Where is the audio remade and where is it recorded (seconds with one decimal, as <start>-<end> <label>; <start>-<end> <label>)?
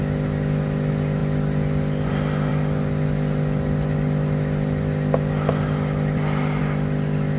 0.0-7.4 recorded